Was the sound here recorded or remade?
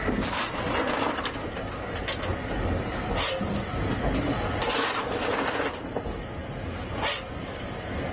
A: recorded